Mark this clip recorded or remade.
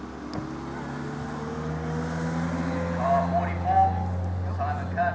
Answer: recorded